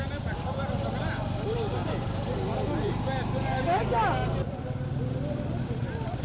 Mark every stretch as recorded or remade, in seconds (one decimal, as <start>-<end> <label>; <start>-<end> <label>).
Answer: 0.0-6.2 recorded